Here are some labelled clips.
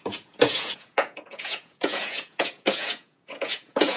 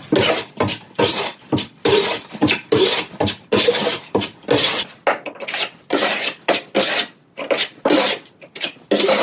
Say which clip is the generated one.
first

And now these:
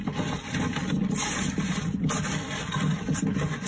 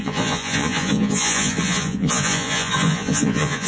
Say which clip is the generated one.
second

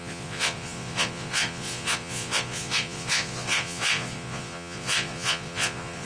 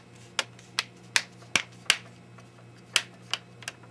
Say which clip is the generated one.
first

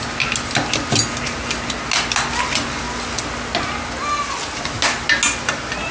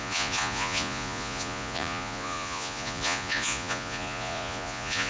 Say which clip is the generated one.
second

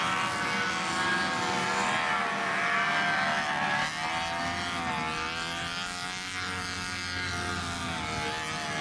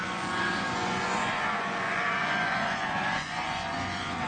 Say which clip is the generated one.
second